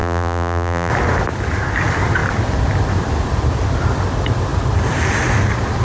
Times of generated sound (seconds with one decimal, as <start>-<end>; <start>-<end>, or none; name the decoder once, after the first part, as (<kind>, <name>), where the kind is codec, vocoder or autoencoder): 0.0-0.9 (vocoder, BigVGAN v2)